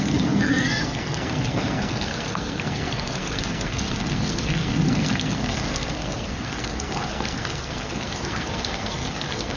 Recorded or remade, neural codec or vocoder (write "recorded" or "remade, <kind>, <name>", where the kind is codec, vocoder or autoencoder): remade, codec, SNAC